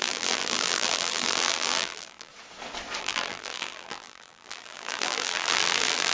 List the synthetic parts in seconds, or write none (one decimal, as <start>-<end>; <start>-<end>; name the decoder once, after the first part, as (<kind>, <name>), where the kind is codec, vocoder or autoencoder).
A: 0.0-2.3 (vocoder, BigVGAN v2); 3.0-6.1